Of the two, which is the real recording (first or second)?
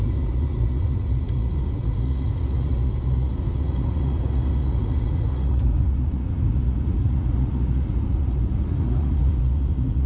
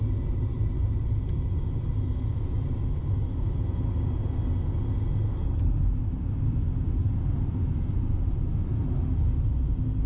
second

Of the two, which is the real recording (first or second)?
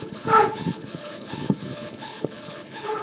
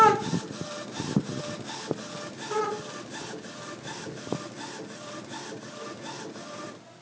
second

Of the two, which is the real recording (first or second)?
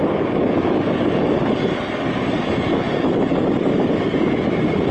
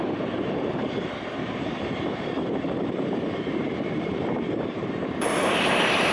first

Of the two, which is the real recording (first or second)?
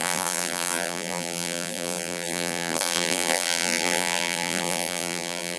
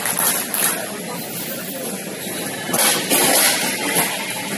second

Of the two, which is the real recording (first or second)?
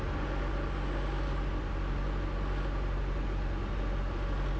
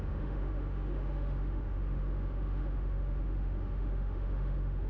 first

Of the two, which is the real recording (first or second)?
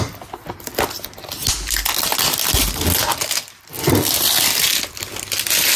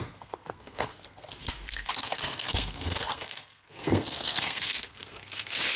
first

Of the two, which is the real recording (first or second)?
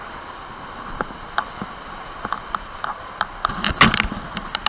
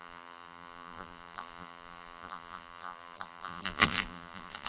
first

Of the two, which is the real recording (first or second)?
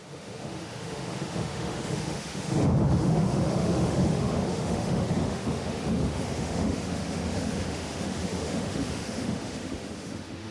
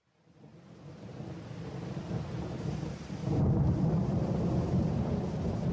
second